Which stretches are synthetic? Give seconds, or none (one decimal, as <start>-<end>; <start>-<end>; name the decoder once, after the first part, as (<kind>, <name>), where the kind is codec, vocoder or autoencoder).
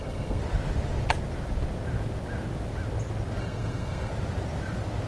0.0-0.4 (codec, SNAC); 3.4-4.1